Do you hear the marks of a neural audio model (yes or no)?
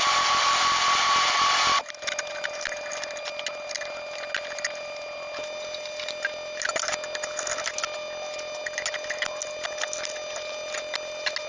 no